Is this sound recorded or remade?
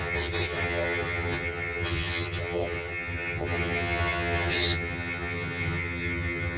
remade